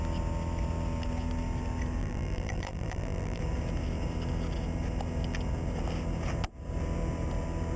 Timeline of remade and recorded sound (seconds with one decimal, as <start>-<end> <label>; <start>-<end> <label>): 0.0-2.0 recorded; 2.0-3.4 remade; 3.4-7.8 recorded